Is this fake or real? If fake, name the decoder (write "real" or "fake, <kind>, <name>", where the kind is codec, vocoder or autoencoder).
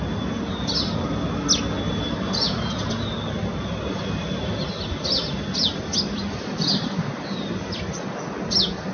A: real